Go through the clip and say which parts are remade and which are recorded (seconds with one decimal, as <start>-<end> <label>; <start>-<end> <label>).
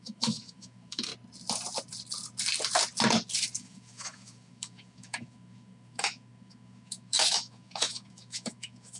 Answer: 0.0-1.1 remade; 1.1-3.6 recorded; 3.6-9.0 remade